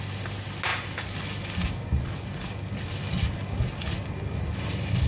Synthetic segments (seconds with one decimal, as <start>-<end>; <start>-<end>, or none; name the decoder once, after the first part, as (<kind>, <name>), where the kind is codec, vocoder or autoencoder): none